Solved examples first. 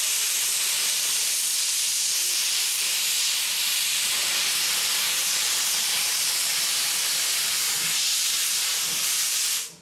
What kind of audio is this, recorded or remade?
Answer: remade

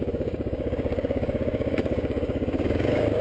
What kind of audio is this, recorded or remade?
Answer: remade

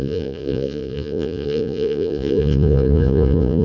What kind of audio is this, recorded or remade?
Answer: remade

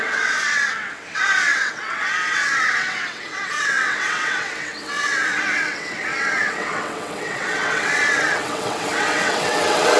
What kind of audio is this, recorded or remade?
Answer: remade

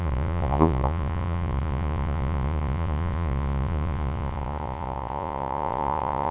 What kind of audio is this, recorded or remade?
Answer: remade